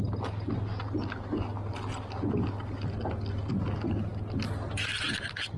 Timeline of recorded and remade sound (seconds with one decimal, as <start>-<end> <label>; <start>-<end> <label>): 0.0-5.6 recorded